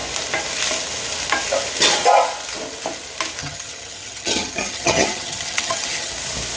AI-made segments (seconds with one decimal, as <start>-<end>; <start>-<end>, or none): 3.4-6.1